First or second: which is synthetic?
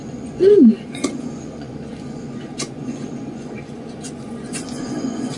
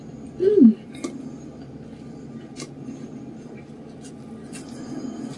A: first